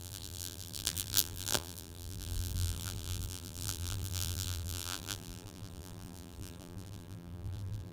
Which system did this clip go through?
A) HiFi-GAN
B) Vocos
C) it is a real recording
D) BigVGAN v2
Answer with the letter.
D